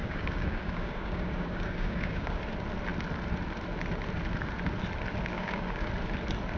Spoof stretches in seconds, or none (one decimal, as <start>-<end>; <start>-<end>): 0.0-2.4; 5.3-5.9